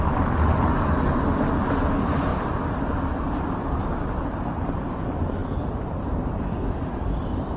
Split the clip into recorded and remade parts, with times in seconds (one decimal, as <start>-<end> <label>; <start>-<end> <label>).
0.0-2.3 recorded; 2.3-2.8 remade; 2.8-5.4 recorded; 5.4-7.6 remade